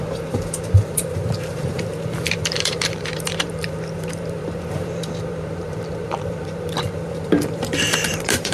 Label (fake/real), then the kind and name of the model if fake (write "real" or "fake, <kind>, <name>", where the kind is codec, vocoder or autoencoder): fake, vocoder, BigVGAN v2